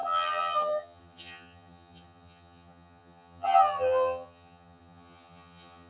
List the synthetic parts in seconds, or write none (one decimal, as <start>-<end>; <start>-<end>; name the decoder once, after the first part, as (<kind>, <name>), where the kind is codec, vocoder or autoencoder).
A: 0.0-5.9 (vocoder, HiFi-GAN)